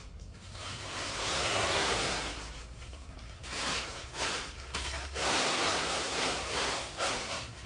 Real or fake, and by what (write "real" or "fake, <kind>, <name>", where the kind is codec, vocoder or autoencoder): fake, codec, SNAC